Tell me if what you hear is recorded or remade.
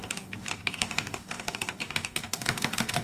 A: remade